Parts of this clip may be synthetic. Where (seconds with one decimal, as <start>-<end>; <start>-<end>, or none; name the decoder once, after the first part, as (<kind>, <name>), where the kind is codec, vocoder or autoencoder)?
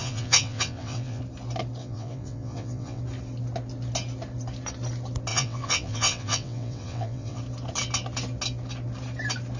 0.0-1.2 (vocoder, WaveNeXt); 1.8-3.0; 5.3-7.4